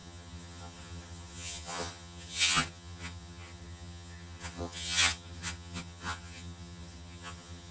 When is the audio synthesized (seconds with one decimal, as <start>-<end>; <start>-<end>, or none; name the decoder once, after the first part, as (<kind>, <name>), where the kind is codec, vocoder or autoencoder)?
0.0-7.7 (vocoder, HiFi-GAN)